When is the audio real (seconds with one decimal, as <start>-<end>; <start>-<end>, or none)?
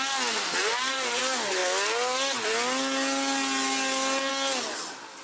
0.0-0.6; 1.2-5.2